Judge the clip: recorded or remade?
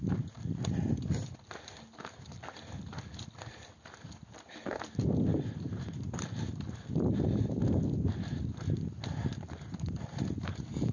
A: recorded